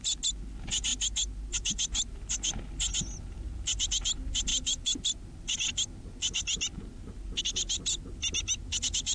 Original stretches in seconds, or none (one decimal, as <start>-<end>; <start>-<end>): 0.0-9.1